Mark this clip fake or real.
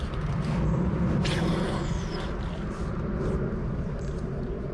real